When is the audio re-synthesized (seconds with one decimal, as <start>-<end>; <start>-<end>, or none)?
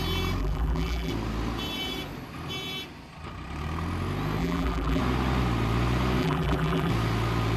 0.4-1.1; 4.4-5.0; 6.2-6.9